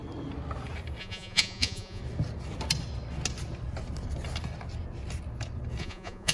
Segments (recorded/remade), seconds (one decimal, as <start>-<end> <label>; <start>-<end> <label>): 0.0-1.0 recorded; 1.0-2.0 remade; 2.0-5.8 recorded; 5.8-6.3 remade